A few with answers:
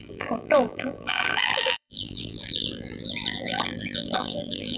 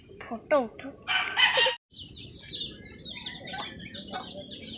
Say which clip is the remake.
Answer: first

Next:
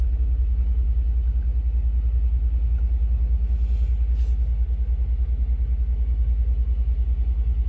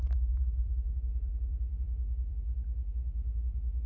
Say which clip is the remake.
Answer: second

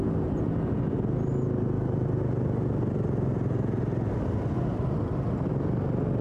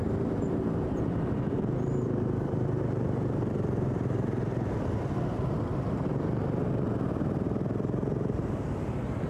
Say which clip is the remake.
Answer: second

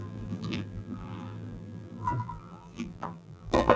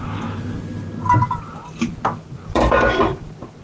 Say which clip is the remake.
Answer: first